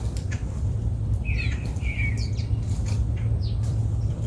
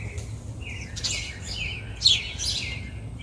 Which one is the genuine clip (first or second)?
second